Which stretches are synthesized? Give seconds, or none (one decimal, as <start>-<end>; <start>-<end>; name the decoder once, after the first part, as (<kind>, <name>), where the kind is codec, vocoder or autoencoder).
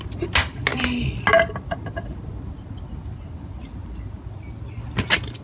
none